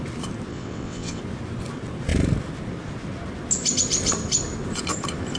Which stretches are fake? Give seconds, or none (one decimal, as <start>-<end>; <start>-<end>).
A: 0.5-1.2